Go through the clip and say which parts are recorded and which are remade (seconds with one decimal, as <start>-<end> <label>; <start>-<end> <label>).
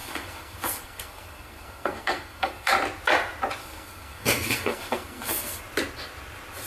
0.0-2.7 remade; 2.7-3.6 recorded; 3.6-5.6 remade; 5.6-6.7 recorded